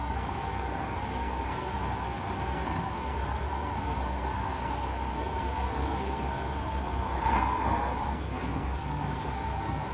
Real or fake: fake